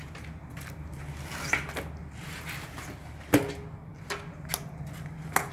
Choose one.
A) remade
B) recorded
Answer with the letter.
B